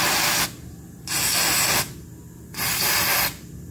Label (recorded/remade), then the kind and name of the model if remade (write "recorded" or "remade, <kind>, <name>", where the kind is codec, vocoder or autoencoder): recorded